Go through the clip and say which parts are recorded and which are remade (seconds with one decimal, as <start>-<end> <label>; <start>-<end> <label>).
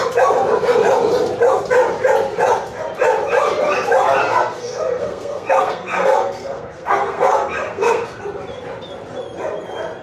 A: 0.0-4.2 recorded; 4.2-8.2 remade; 8.2-10.0 recorded